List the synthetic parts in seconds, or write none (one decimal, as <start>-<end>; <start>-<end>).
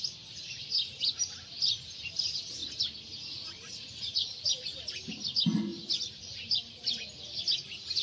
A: none